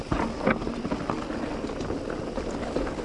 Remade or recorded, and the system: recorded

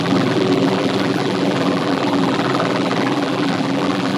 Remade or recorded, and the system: remade, vocoder, BigVGAN v2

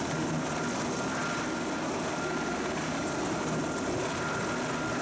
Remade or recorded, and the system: recorded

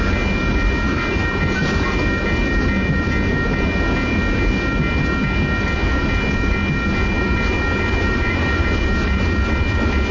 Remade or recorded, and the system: recorded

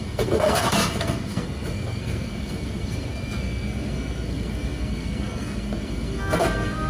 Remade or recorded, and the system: remade, codec, SNAC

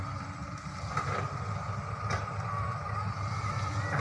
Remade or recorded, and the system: remade, vocoder, BigVGAN v2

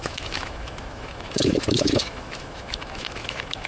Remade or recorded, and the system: remade, autoencoder, DAC-VAE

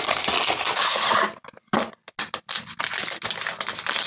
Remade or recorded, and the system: recorded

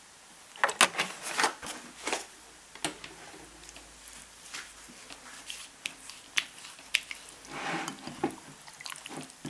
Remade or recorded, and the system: recorded